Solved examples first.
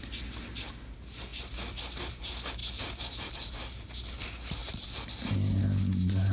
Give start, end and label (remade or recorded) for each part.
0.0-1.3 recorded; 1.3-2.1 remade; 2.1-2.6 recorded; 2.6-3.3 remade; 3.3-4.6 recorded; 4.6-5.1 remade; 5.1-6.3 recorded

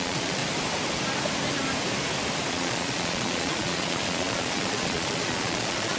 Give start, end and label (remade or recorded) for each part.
0.0-0.4 remade; 0.4-2.5 recorded; 2.5-6.0 remade